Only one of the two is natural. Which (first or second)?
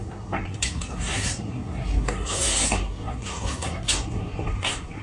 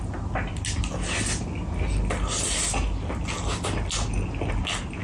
second